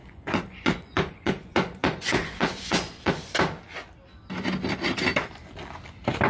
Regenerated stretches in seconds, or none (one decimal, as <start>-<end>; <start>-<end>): 0.0-3.1